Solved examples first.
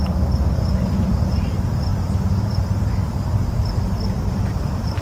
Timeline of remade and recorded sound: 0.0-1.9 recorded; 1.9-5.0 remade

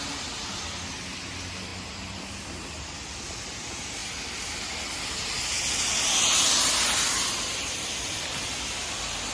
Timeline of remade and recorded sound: 0.0-1.7 recorded; 1.7-2.2 remade; 2.2-9.3 recorded